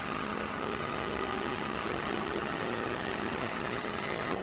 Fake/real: fake